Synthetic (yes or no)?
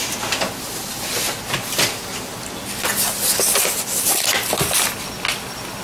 no